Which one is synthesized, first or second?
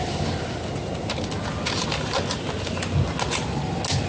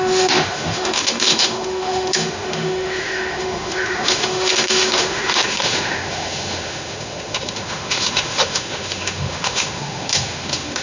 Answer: second